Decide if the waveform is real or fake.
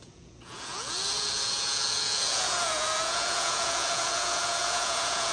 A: fake